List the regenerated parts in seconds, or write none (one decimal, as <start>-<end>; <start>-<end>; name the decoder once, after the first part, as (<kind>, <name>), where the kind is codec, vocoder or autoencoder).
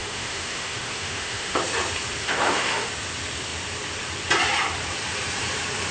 0.0-1.6 (autoencoder, DAC-VAE); 2.2-2.9